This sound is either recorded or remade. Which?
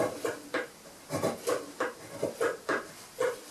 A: recorded